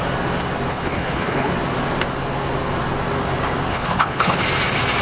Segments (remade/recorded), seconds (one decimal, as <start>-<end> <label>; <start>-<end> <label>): 0.0-0.7 recorded; 0.7-1.5 remade; 1.5-3.7 recorded; 3.7-4.4 remade; 4.4-5.0 recorded